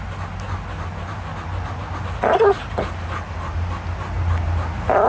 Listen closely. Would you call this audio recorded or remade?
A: recorded